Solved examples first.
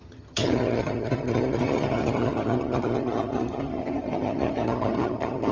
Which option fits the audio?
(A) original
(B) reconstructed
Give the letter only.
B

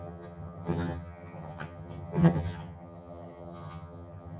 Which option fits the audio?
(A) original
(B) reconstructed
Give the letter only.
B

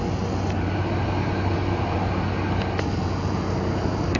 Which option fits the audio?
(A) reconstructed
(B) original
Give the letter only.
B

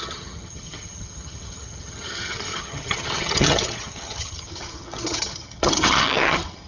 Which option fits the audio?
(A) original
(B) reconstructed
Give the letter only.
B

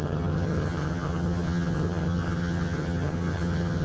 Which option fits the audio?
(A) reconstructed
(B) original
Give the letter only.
A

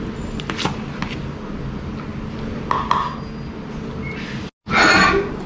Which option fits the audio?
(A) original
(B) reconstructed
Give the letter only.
A